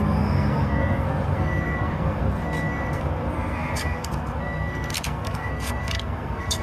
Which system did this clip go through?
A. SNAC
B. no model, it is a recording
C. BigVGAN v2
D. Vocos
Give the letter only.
A